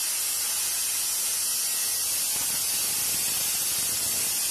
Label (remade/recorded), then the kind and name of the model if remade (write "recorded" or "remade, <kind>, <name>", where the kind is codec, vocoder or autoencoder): recorded